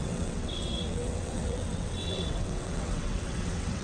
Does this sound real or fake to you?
fake